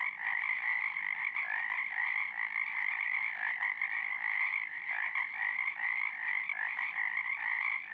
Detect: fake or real real